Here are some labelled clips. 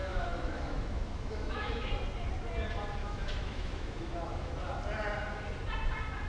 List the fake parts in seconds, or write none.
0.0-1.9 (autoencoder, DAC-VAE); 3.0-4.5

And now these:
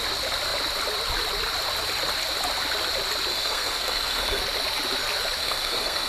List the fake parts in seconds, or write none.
3.3-4.4 (codec, SNAC); 5.4-6.1

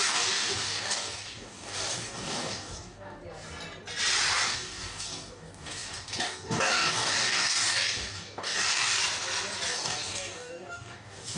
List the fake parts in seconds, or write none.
0.0-3.2 (codec, DAC); 4.4-9.0; 9.7-11.4

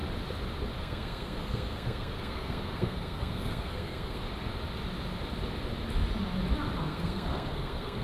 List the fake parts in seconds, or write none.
0.8-4.2 (codec, SNAC); 6.8-8.0